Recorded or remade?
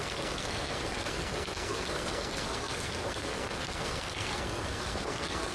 remade